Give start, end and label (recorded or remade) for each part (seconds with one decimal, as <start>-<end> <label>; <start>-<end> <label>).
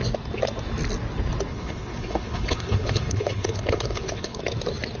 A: 0.0-1.5 recorded; 1.5-4.4 remade; 4.4-5.0 recorded